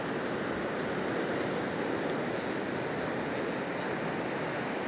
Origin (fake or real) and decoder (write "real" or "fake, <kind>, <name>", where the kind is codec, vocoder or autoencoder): real